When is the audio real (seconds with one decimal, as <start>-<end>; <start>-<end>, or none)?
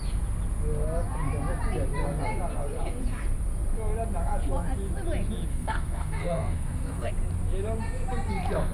0.0-5.5; 7.1-8.7